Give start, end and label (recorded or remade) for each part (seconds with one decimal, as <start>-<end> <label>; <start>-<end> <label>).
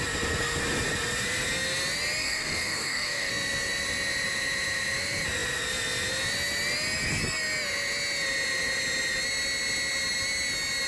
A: 0.0-2.2 recorded; 2.2-3.3 remade; 3.3-10.9 recorded